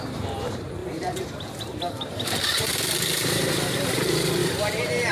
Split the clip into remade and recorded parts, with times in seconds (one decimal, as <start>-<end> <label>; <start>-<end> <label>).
0.0-5.1 remade